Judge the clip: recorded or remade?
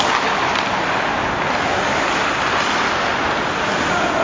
recorded